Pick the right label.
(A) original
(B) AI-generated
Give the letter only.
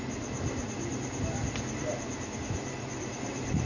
A